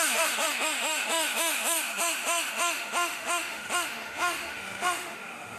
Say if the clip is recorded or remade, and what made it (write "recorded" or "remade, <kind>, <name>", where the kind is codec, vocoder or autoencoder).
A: remade, autoencoder, DAC-VAE